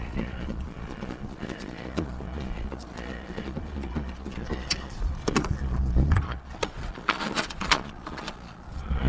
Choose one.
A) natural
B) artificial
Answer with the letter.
B